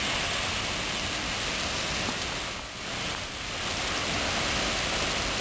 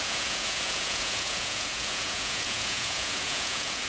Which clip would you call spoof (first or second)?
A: second